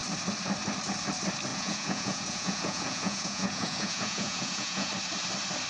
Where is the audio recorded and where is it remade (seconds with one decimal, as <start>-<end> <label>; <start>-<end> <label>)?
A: 0.0-1.5 recorded; 1.5-4.9 remade; 4.9-5.7 recorded